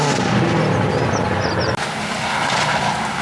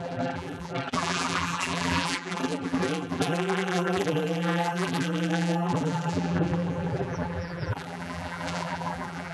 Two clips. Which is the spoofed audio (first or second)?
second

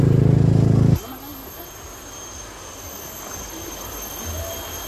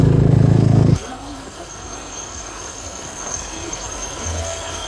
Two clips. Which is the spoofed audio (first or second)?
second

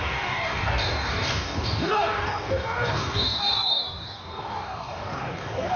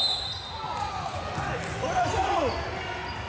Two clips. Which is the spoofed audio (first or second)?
first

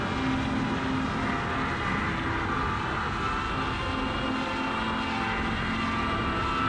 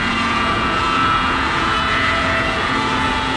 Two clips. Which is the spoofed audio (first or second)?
second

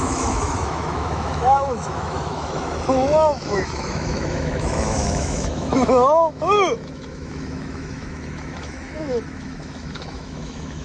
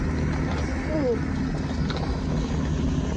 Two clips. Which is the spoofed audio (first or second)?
first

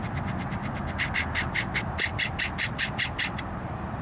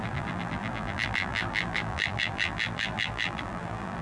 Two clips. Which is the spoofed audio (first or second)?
second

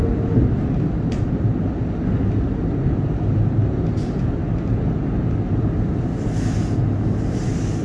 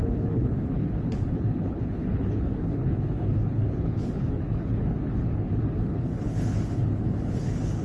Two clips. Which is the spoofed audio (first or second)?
second